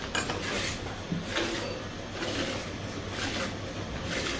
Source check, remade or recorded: recorded